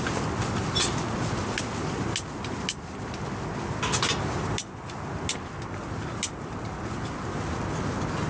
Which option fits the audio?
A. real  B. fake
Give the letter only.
A